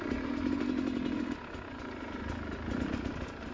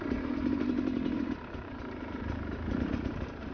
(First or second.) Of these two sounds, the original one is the first